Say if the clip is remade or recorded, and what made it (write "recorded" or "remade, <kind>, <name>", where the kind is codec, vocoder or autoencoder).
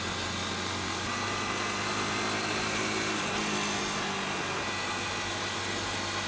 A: recorded